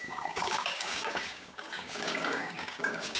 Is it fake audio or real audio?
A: fake